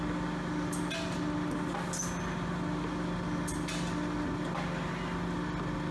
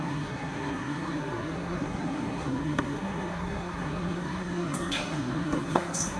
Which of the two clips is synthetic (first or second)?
second